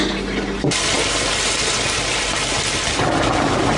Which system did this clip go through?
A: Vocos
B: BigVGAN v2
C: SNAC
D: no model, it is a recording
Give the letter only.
B